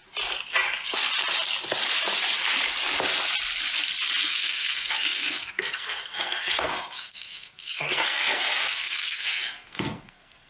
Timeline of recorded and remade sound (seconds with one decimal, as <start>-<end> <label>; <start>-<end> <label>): 0.0-4.2 recorded; 4.2-10.5 remade